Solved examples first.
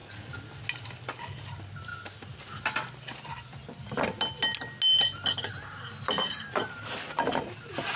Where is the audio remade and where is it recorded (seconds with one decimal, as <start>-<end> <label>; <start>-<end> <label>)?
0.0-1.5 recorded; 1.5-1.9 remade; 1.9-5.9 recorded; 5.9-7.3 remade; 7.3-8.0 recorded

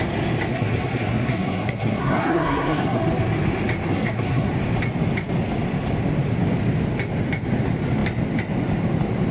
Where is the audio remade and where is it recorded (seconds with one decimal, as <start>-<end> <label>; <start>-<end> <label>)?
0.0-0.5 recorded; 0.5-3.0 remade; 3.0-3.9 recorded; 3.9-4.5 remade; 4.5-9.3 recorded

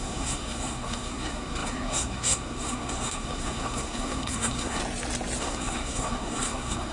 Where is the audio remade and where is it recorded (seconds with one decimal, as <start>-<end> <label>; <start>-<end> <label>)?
0.0-4.8 remade; 4.8-5.4 recorded; 5.4-6.9 remade

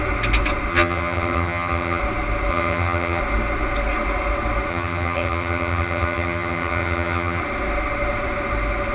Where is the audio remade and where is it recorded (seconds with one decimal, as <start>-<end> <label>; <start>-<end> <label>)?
0.0-0.7 recorded; 0.7-2.0 remade; 2.0-2.5 recorded; 2.5-3.2 remade; 3.2-4.7 recorded; 4.7-7.4 remade; 7.4-8.9 recorded

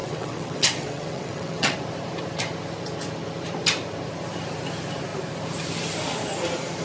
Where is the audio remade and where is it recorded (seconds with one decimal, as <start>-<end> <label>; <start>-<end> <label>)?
0.0-1.8 remade; 1.8-6.8 recorded

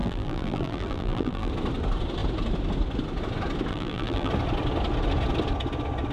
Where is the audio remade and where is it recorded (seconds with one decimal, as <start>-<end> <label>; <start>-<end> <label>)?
0.0-1.5 remade; 1.5-3.7 recorded; 3.7-4.3 remade; 4.3-6.1 recorded

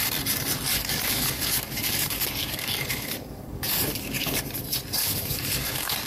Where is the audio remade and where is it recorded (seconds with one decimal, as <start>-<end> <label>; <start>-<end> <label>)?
0.0-0.7 recorded; 0.7-4.4 remade; 4.4-5.0 recorded; 5.0-6.1 remade